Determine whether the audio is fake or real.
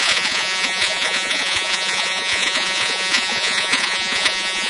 fake